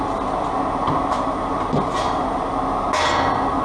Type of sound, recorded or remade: recorded